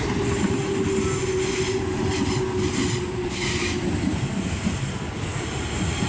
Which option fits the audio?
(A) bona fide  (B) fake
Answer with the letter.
A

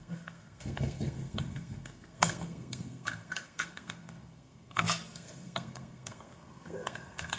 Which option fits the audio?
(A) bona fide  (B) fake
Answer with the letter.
B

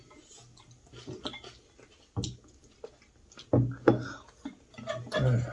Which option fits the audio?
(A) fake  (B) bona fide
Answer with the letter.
B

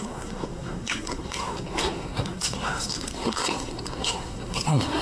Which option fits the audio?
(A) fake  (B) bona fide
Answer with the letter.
A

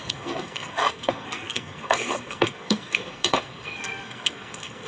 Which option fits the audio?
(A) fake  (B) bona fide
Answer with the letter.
A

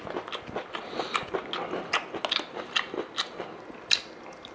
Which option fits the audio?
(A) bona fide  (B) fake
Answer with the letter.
A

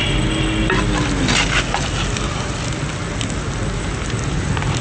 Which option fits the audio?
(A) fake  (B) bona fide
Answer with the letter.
B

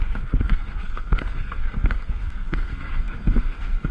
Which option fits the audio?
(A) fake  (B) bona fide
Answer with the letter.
A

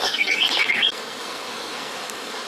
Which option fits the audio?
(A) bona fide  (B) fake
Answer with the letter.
B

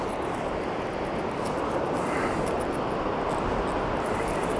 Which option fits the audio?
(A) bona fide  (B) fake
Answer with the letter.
A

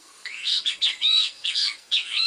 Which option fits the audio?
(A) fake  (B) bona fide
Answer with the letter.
A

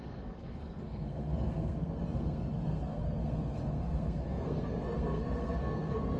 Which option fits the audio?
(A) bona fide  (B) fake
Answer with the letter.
B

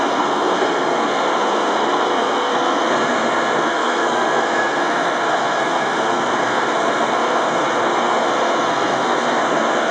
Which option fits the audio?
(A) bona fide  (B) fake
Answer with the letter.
B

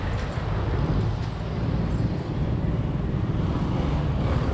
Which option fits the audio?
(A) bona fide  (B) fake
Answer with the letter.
A